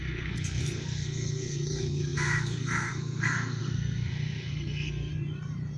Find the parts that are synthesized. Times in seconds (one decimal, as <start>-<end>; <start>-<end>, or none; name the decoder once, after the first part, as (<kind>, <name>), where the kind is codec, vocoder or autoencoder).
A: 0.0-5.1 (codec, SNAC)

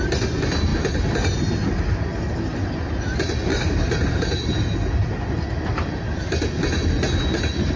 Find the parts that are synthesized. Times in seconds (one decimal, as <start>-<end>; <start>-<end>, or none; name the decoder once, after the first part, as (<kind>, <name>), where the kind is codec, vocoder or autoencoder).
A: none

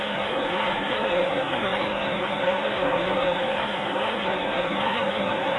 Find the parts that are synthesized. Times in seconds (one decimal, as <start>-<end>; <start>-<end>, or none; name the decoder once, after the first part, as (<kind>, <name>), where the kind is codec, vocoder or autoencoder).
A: 0.0-5.6 (codec, SNAC)

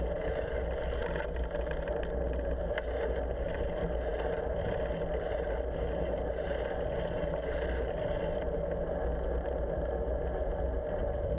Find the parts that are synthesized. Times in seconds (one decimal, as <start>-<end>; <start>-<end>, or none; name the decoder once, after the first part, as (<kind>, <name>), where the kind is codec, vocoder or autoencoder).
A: none

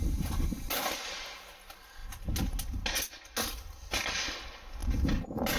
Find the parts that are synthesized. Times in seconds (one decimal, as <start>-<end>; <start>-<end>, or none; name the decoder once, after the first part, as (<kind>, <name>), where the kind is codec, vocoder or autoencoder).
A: none

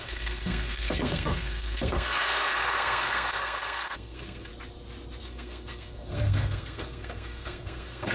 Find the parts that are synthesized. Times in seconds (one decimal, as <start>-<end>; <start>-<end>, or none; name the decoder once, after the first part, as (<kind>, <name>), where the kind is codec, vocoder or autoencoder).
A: 0.0-4.5 (codec, SNAC); 5.2-8.1

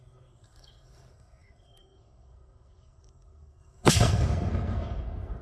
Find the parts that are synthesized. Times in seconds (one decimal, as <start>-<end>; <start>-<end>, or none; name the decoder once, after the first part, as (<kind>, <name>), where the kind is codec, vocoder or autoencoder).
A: 0.0-5.4 (codec, SNAC)